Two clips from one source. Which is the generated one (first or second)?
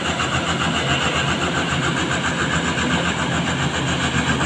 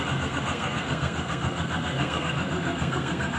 second